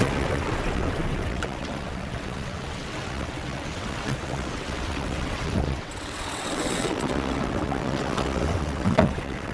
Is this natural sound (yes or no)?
no